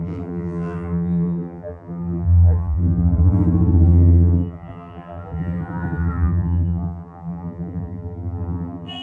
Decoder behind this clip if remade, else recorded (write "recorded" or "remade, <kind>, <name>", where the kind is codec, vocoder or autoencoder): remade, vocoder, BigVGAN v2